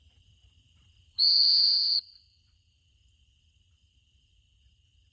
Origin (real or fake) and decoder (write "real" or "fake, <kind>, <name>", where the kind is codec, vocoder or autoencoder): fake, vocoder, BigVGAN v2